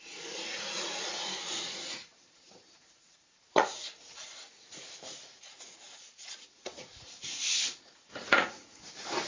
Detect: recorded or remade remade